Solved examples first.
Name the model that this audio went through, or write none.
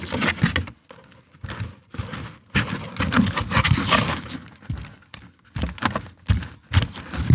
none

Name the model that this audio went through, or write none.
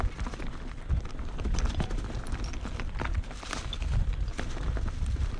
none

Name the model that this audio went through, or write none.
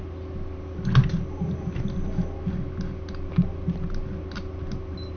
none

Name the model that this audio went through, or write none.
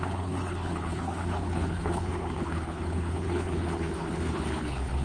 codec, HILCodec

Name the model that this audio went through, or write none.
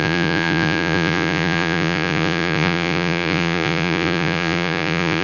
vocoder, Vocos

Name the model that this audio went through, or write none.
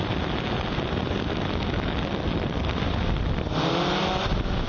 none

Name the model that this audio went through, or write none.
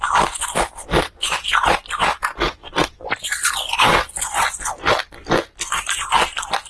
none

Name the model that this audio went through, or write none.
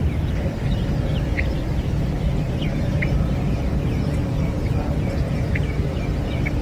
none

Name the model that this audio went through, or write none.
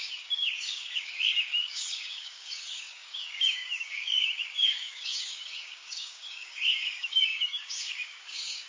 codec, DAC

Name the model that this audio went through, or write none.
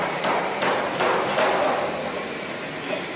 none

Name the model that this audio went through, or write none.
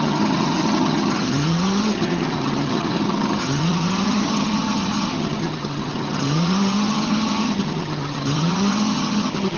vocoder, HiFi-GAN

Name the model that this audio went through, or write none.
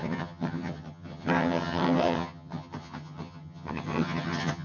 vocoder, HiFi-GAN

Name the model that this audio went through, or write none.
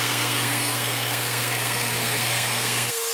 codec, SNAC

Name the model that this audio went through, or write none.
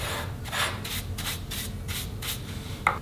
none